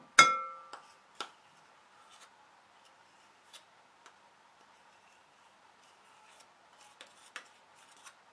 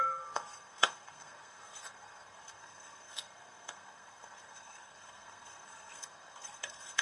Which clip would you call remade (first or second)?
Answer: second